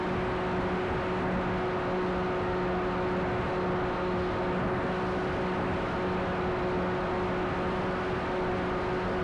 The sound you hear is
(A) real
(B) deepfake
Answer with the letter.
A